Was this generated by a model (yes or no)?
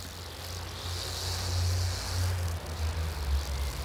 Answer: no